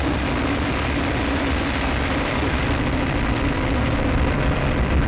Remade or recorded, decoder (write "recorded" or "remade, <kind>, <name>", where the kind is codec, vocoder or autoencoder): recorded